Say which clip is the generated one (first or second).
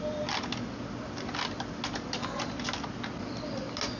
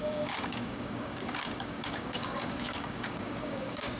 second